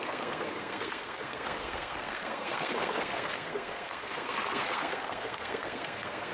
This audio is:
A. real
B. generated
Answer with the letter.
B